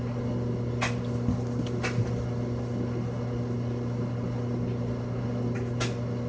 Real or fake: real